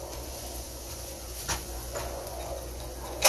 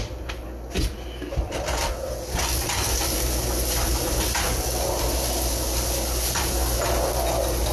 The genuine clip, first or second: second